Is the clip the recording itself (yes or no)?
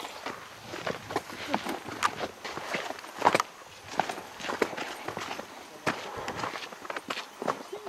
yes